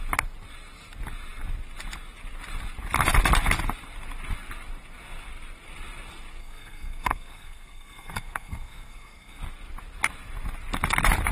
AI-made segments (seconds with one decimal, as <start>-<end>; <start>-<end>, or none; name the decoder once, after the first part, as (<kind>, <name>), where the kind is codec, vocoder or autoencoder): 6.4-9.4 (codec, SNAC)